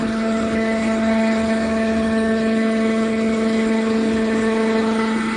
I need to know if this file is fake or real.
fake